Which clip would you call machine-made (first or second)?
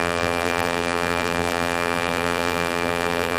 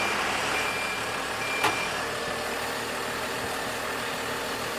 first